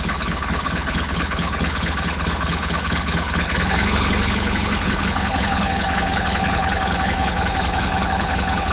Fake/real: fake